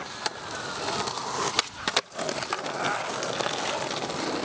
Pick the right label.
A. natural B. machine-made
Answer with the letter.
A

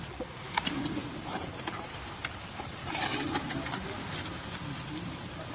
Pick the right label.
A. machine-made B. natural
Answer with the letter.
B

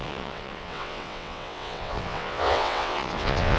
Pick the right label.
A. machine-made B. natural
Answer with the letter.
A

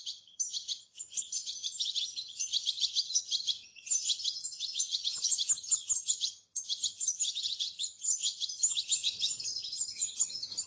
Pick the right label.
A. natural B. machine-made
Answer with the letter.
B